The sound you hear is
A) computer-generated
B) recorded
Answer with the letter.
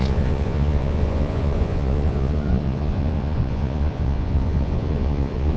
A